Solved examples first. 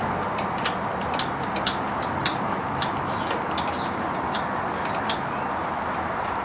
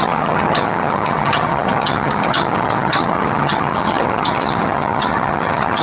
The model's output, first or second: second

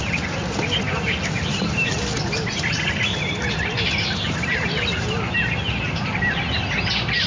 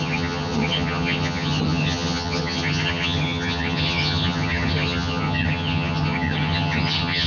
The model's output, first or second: second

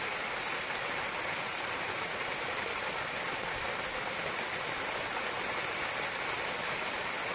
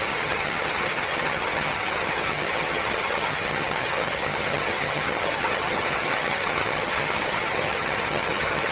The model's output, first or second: second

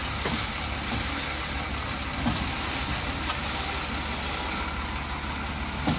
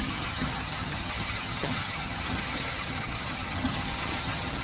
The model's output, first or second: second